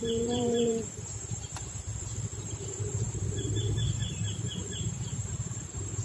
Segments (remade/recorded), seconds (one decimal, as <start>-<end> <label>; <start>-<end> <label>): 0.0-6.0 remade